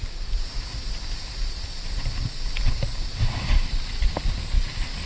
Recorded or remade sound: recorded